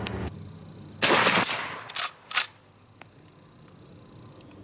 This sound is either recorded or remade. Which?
recorded